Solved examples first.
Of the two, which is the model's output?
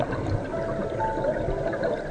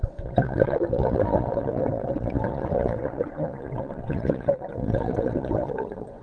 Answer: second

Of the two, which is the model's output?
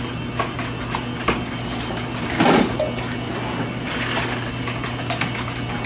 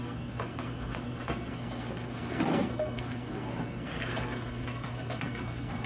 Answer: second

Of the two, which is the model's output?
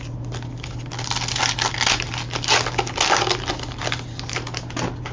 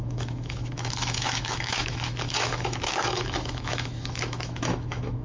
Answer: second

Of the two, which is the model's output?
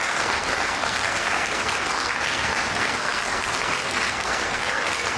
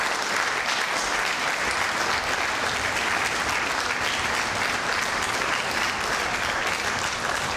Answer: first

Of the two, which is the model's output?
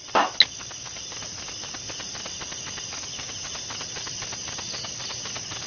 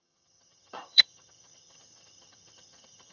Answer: second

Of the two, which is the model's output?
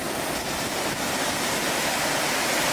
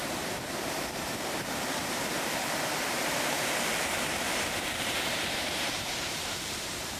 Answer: second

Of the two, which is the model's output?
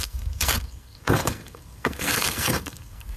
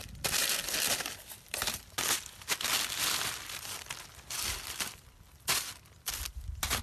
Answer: first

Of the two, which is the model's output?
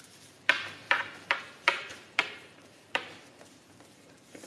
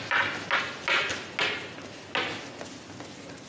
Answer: first